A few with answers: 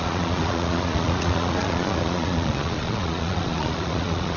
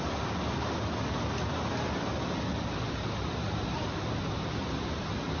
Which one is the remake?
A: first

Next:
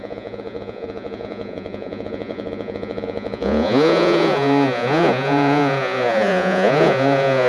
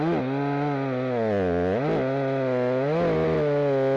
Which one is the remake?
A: first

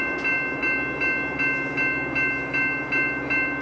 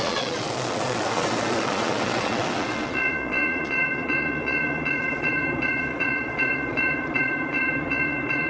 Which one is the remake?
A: second